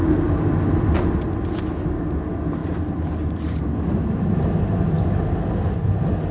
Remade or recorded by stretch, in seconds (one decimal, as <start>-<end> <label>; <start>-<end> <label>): 0.0-2.6 recorded; 2.6-3.6 remade; 3.6-6.3 recorded